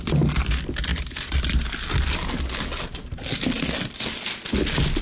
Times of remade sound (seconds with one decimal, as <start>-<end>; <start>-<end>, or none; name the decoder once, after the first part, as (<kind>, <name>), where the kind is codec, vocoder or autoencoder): none